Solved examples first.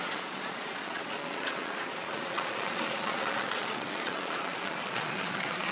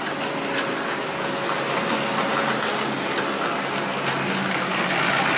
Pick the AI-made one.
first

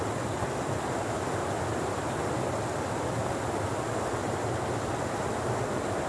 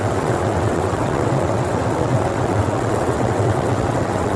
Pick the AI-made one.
second